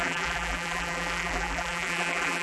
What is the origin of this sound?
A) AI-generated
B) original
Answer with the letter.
A